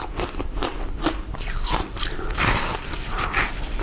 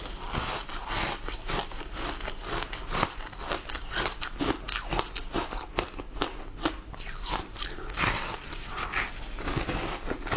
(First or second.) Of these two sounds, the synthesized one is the first